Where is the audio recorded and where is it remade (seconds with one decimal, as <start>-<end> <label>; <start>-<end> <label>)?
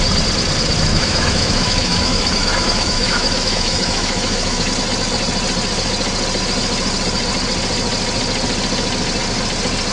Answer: 0.0-0.9 recorded; 0.9-4.7 remade; 4.7-9.9 recorded